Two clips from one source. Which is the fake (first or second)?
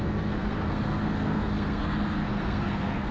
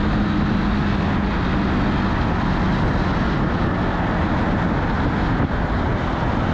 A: first